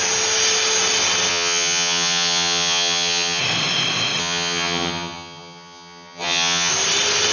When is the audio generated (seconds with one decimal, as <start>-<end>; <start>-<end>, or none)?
1.3-3.4; 4.2-6.7